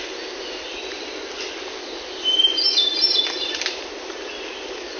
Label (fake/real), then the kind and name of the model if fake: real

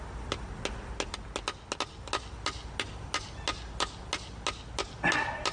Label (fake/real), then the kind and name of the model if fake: real